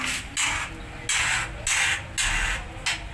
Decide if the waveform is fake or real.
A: real